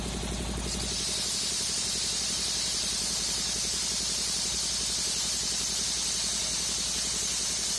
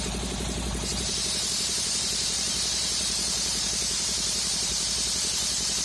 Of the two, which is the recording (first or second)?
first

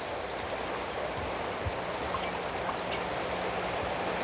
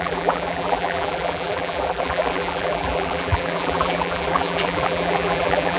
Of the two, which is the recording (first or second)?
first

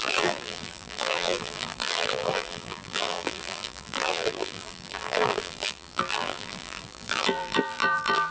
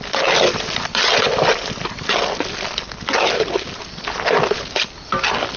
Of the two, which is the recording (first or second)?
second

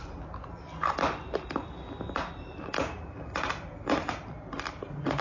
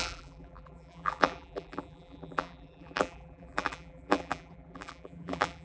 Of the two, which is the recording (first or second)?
first